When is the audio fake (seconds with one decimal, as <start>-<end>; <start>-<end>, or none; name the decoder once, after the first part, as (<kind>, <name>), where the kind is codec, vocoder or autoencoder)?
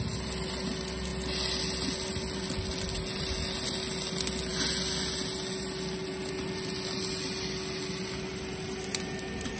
none